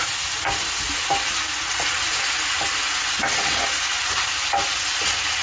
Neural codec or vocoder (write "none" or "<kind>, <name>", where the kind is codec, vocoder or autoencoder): none